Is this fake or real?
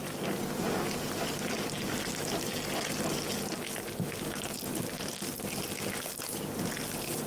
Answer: real